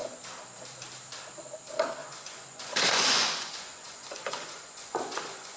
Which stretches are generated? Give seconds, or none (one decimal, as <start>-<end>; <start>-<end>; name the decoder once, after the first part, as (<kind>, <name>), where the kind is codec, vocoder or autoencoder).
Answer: 2.0-5.6 (vocoder, Vocos)